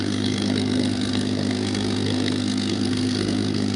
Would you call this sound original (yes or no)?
no